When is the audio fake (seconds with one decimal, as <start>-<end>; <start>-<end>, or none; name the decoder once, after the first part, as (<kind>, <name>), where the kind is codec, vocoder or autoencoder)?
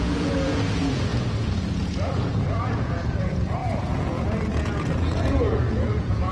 0.0-6.3 (vocoder, Vocos)